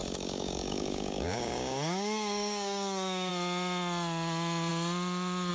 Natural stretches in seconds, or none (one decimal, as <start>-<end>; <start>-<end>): 3.3-5.5